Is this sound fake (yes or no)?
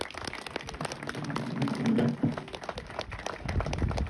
no